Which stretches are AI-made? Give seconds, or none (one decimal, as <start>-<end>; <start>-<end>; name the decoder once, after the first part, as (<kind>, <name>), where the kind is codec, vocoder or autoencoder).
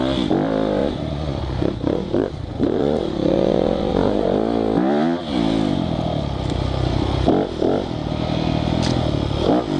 0.8-4.2 (vocoder, Vocos)